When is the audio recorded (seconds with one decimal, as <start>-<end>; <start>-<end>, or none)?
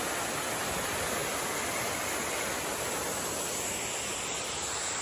0.0-5.0